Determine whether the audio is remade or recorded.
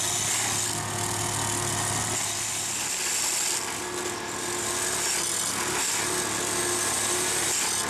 recorded